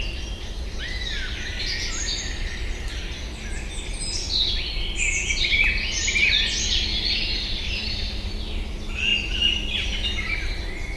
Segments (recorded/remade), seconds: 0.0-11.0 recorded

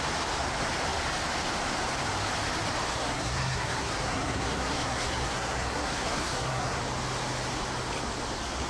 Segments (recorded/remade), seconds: 0.0-2.9 recorded; 2.9-6.8 remade; 6.8-8.7 recorded